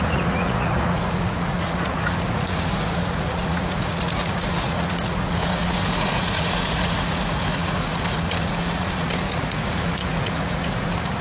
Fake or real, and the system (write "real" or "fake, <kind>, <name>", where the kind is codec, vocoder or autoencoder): fake, vocoder, Vocos